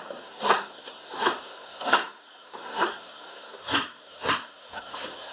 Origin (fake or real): fake